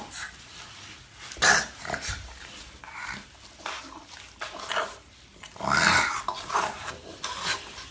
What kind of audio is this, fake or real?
real